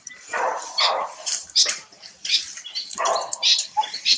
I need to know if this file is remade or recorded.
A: remade